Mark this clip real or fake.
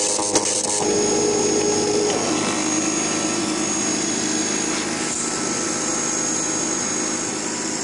real